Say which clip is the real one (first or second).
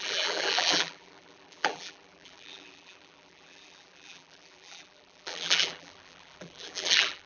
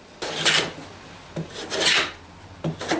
second